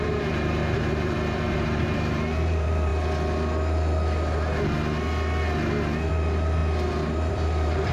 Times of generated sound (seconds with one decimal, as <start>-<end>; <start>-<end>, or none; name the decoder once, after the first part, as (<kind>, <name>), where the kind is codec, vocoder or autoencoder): 0.0-2.9 (vocoder, BigVGAN v2); 6.1-6.6; 7.3-7.9